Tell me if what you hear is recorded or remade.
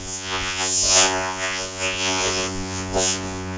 remade